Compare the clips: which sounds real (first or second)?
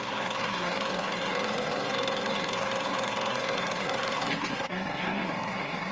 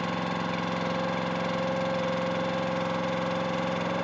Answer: second